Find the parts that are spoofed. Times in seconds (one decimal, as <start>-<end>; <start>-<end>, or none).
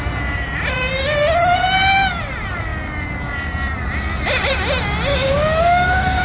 5.1-6.2